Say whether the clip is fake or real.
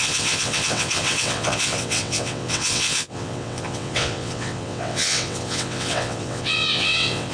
fake